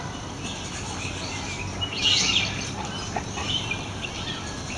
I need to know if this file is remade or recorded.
recorded